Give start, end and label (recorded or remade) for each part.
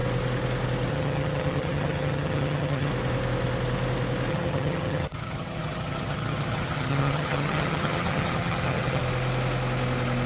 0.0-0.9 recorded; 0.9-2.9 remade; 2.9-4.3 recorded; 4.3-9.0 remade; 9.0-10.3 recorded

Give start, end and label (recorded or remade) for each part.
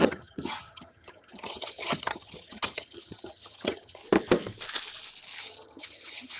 0.0-4.0 remade; 4.0-5.4 recorded; 5.4-6.4 remade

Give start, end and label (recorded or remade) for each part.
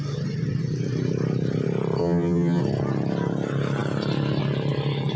0.0-2.0 recorded; 2.0-2.6 remade; 2.6-5.2 recorded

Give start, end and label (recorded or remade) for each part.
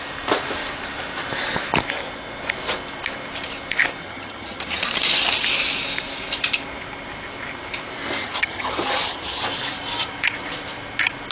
0.0-4.0 recorded; 4.0-4.8 remade; 4.8-8.2 recorded; 8.2-9.4 remade; 9.4-11.3 recorded